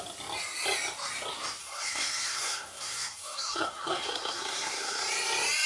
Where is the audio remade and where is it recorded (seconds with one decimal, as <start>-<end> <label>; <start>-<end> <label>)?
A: 0.0-1.6 recorded; 1.6-5.0 remade; 5.0-5.7 recorded